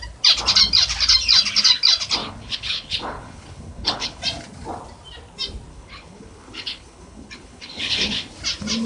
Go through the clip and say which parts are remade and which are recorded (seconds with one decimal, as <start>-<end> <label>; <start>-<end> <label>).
0.0-2.2 recorded; 2.2-4.2 remade; 4.2-5.7 recorded; 5.7-8.3 remade; 8.3-8.9 recorded